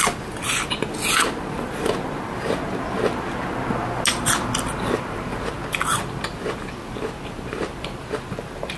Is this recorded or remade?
recorded